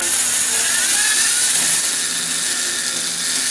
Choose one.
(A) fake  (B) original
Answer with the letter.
B